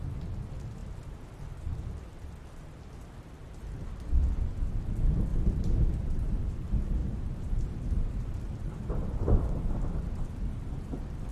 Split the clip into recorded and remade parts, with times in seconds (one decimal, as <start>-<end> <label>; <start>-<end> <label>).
0.0-5.3 recorded; 5.3-6.5 remade; 6.5-7.0 recorded; 7.0-9.5 remade; 9.5-11.3 recorded